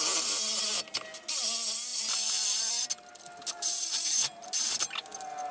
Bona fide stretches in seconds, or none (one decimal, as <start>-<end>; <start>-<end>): 0.0-5.5